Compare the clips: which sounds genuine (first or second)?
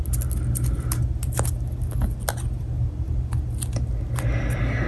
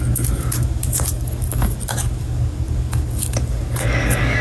first